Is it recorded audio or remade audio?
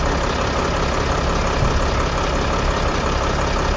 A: recorded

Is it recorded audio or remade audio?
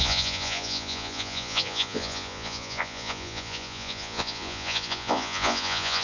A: remade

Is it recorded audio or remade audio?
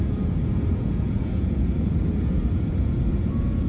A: remade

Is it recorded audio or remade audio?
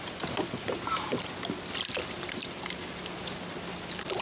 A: recorded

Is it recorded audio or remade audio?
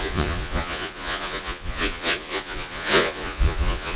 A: remade